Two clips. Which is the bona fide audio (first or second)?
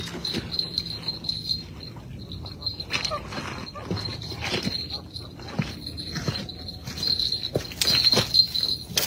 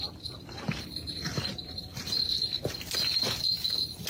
first